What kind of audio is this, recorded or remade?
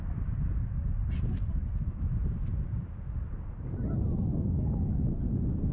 recorded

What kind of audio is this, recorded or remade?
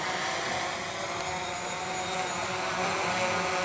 recorded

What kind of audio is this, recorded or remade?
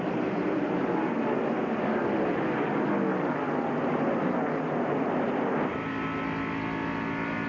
recorded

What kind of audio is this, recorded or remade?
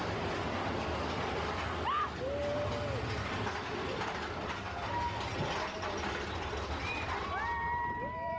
recorded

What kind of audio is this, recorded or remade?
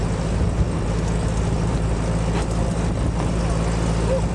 recorded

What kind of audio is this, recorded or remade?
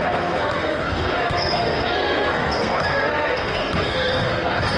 remade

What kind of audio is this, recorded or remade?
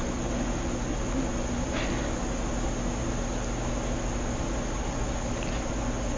recorded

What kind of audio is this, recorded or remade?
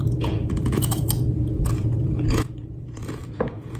remade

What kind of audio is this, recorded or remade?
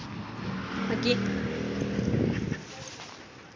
recorded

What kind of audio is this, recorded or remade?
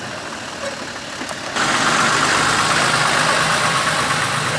recorded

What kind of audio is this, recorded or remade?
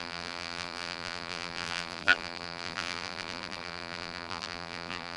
remade